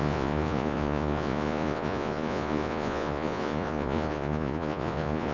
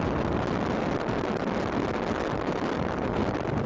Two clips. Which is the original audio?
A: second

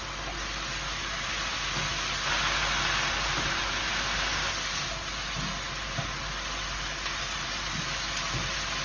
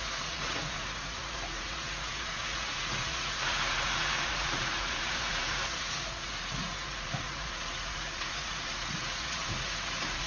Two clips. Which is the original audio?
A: first